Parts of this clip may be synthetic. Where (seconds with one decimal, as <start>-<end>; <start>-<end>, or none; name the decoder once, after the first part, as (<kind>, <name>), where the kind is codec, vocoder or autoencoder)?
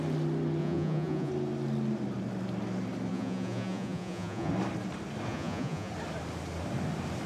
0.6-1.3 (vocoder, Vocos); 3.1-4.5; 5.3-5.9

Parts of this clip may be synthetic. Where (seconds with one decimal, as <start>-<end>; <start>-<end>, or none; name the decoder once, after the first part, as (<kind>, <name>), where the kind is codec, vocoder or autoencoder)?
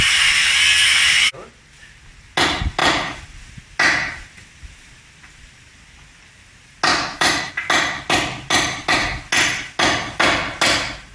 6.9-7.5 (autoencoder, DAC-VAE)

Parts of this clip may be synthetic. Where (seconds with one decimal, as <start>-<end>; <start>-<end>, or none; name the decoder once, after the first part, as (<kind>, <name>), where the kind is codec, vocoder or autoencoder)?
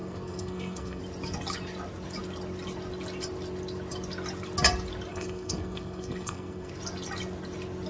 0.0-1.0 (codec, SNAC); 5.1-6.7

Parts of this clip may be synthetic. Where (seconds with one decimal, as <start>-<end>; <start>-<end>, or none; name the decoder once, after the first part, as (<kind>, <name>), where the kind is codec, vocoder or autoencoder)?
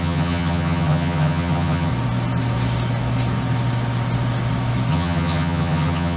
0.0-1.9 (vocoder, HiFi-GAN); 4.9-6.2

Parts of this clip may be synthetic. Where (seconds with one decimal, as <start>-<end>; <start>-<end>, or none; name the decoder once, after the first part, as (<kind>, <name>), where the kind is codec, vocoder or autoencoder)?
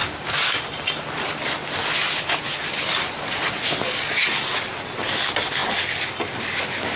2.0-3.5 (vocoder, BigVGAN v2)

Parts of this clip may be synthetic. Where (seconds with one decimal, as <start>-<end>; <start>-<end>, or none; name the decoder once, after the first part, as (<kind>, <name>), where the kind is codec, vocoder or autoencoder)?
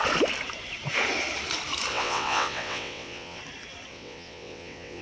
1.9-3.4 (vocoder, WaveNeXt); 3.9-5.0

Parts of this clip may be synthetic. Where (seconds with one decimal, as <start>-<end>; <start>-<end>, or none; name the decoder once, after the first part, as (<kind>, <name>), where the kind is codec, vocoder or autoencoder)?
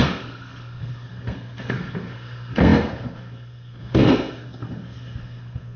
0.0-5.8 (codec, SNAC)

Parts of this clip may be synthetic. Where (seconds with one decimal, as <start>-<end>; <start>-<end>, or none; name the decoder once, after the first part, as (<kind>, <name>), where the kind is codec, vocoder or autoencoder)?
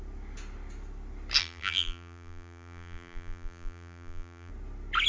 1.4-4.5 (vocoder, BigVGAN v2)